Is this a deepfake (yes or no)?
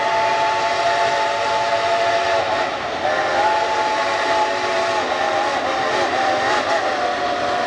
no